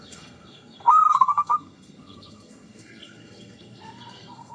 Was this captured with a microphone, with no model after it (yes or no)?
no